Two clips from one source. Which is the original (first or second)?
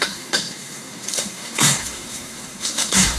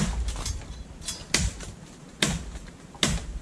second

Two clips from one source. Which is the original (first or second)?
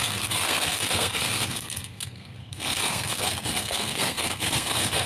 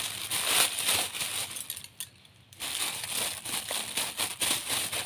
second